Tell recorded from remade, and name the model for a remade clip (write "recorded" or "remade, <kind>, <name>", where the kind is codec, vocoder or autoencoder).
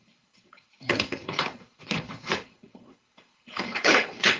remade, codec, HILCodec